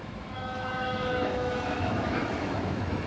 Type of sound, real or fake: fake